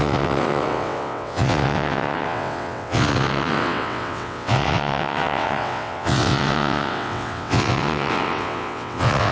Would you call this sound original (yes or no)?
no